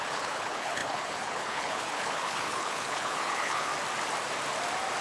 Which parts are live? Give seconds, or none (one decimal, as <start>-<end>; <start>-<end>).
3.7-5.0